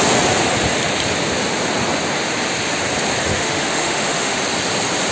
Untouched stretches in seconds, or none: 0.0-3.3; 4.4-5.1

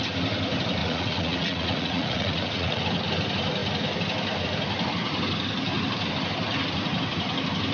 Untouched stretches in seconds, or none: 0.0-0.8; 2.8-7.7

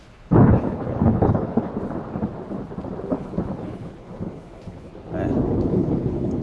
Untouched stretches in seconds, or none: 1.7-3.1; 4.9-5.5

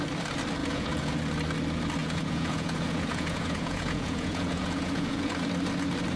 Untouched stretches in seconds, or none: 0.0-0.6; 1.2-2.0; 5.3-6.2

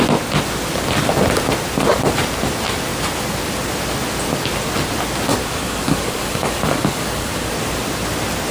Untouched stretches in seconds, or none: 0.0-5.4; 7.5-8.5

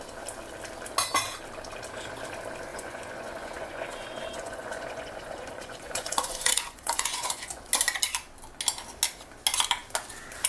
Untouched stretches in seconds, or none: 0.0-2.7; 7.7-10.5